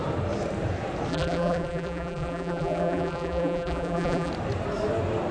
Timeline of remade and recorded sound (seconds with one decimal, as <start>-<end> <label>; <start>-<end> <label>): 0.0-1.1 recorded; 1.1-4.3 remade; 4.3-5.3 recorded